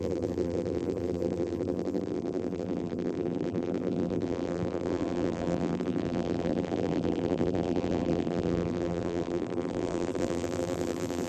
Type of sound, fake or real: fake